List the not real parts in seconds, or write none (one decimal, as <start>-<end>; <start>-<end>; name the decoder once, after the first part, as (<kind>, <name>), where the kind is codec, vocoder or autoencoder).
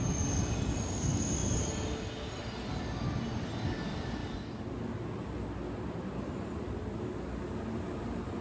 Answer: none